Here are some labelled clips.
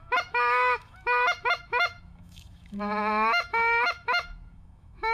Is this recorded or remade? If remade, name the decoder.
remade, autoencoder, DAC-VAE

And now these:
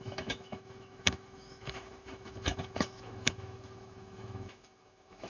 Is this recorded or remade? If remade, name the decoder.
remade, autoencoder, DAC-VAE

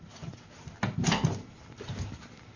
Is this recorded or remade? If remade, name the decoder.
recorded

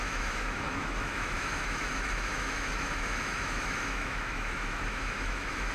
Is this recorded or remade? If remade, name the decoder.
remade, autoencoder, DAC-VAE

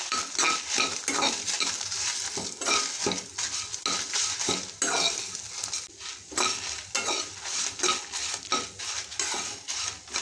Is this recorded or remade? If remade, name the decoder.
recorded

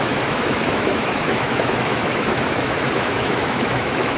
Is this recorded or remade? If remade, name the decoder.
remade, autoencoder, DAC-VAE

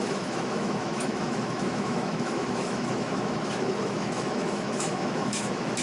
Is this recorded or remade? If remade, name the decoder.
remade, autoencoder, DAC-VAE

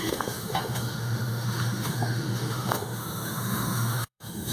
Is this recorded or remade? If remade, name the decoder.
remade, autoencoder, DAC-VAE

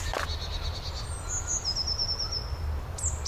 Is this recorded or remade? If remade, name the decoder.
recorded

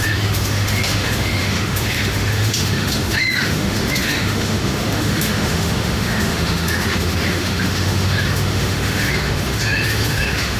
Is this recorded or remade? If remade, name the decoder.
remade, autoencoder, DAC-VAE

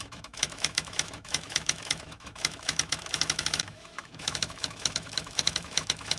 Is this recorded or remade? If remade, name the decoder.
remade, autoencoder, DAC-VAE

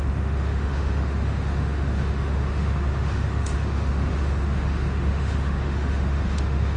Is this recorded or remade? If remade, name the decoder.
remade, autoencoder, DAC-VAE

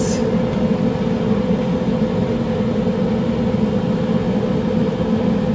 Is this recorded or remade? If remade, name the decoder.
recorded